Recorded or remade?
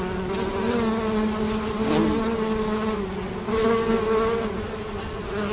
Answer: recorded